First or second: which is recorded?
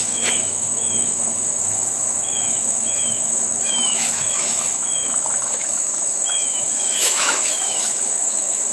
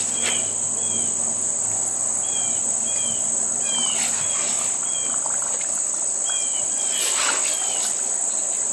second